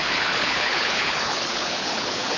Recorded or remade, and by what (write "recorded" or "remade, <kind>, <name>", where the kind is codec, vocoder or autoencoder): remade, codec, HILCodec